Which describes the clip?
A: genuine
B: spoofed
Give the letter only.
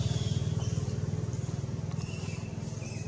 A